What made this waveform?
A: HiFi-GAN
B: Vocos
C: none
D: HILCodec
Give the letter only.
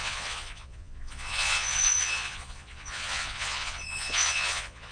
B